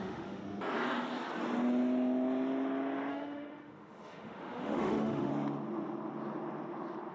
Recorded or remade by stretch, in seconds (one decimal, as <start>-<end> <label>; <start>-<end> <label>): 0.0-0.4 remade; 0.4-3.1 recorded; 3.1-5.3 remade; 5.3-7.1 recorded